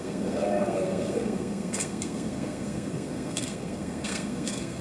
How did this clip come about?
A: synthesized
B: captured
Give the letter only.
A